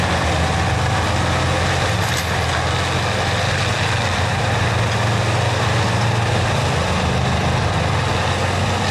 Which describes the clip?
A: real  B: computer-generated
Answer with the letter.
A